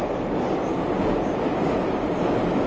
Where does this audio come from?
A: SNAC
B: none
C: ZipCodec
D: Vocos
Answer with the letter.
B